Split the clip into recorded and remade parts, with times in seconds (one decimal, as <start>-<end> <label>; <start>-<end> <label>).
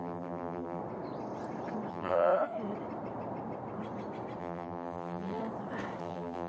0.0-0.8 remade; 0.8-1.9 recorded; 1.9-2.3 remade; 2.3-4.4 recorded; 4.4-5.4 remade; 5.4-6.0 recorded; 6.0-6.5 remade